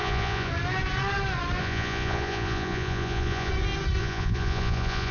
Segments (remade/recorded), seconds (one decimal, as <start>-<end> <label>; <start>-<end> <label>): 0.0-0.5 remade; 0.5-1.6 recorded; 1.6-3.5 remade; 3.5-4.0 recorded; 4.0-5.1 remade